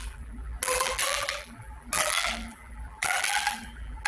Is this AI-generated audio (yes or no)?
yes